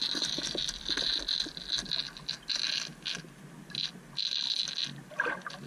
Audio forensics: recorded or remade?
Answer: recorded